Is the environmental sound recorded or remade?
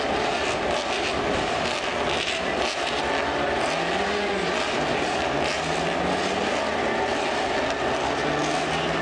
recorded